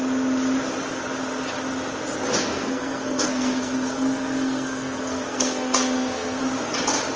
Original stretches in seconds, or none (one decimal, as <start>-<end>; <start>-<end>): 0.0-2.5; 6.4-7.2